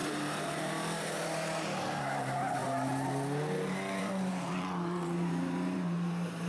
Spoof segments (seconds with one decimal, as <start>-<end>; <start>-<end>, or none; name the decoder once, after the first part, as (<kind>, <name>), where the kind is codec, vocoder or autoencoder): 0.6-2.6 (vocoder, BigVGAN v2); 4.0-6.5